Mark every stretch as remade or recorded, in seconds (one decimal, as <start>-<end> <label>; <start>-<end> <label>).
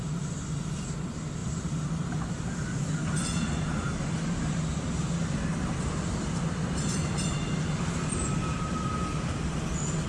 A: 0.0-10.1 recorded